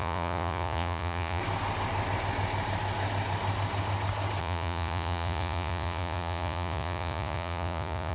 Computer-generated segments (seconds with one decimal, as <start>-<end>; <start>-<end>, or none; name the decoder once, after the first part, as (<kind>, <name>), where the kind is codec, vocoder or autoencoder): 0.0-1.4 (vocoder, Vocos); 4.4-8.1